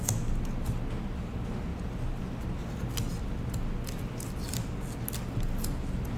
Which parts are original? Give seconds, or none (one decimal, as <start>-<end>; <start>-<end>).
0.0-1.7; 2.2-6.2